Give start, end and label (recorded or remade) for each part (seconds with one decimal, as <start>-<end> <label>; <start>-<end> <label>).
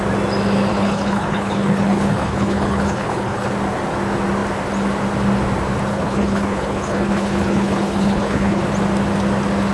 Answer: 0.0-0.7 recorded; 0.7-3.5 remade; 3.5-5.9 recorded; 5.9-8.6 remade; 8.6-9.7 recorded